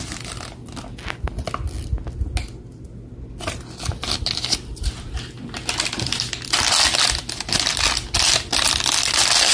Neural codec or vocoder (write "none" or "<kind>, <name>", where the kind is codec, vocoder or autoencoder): none